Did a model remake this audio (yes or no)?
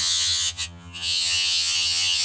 yes